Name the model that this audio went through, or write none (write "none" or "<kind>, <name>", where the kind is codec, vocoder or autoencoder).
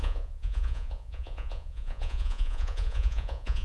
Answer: vocoder, Vocos